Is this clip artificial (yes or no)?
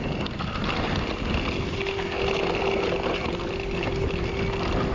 no